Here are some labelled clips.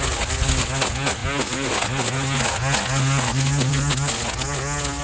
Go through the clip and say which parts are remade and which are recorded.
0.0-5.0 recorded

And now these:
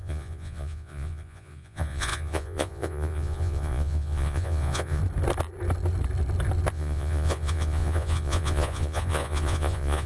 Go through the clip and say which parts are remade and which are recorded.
0.0-5.0 remade; 5.0-6.7 recorded; 6.7-10.1 remade

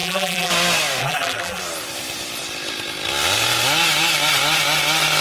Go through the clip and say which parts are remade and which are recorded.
0.0-0.5 remade; 0.5-1.0 recorded; 1.0-1.6 remade; 1.6-5.2 recorded